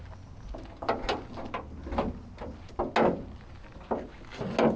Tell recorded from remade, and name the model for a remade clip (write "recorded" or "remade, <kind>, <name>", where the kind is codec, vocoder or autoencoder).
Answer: recorded